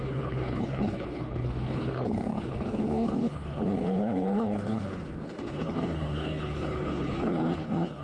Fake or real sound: fake